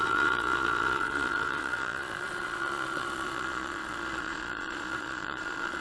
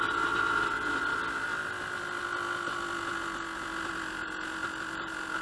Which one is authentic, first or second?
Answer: second